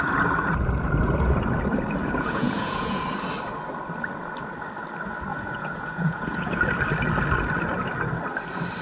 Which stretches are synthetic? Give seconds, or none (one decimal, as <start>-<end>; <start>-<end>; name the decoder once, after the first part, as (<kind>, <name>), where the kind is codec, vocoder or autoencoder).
2.0-3.0 (vocoder, Vocos); 5.3-6.6